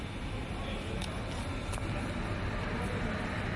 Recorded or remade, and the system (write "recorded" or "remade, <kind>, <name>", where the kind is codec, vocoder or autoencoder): recorded